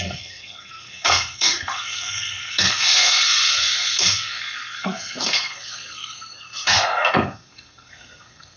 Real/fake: fake